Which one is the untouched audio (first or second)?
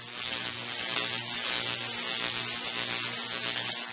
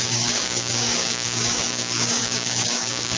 first